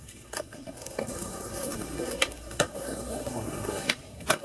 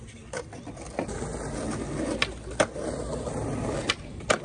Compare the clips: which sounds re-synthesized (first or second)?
first